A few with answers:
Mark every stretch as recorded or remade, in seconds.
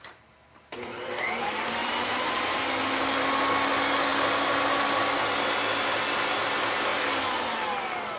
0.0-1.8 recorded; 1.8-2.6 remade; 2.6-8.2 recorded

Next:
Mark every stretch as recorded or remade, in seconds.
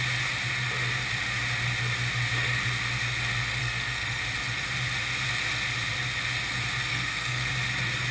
0.0-3.6 recorded; 3.6-4.2 remade; 4.2-6.9 recorded; 6.9-7.5 remade; 7.5-8.1 recorded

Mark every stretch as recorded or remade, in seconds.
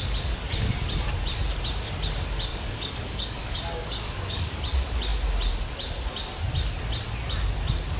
0.0-2.5 recorded; 2.5-4.6 remade; 4.6-8.0 recorded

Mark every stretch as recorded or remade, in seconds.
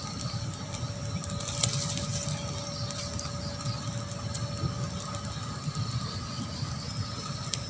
0.0-7.7 recorded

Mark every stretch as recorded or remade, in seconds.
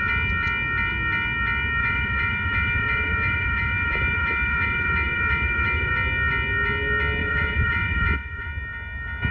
0.0-1.8 recorded; 1.8-5.9 remade; 5.9-7.2 recorded; 7.2-8.5 remade; 8.5-9.3 recorded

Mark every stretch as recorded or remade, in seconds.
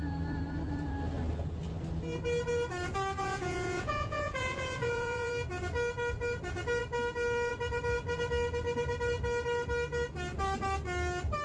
0.0-3.2 recorded; 3.2-5.3 remade; 5.3-11.4 recorded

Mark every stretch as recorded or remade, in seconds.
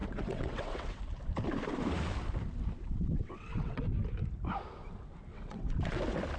0.0-1.0 remade; 1.0-2.8 recorded; 2.8-3.8 remade; 3.8-5.3 recorded; 5.3-6.0 remade; 6.0-6.4 recorded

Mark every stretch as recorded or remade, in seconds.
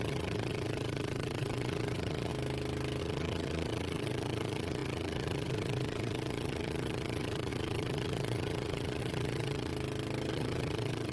0.0-2.3 remade; 2.3-3.0 recorded; 3.0-9.7 remade; 9.7-10.3 recorded; 10.3-11.1 remade